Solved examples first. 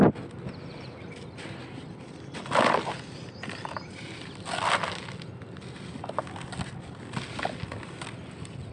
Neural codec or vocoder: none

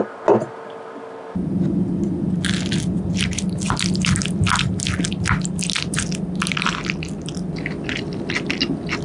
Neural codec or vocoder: none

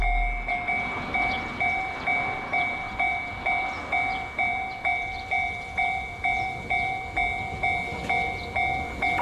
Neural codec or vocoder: none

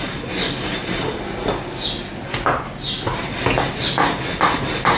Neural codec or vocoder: none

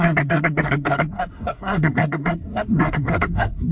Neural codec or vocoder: codec, SNAC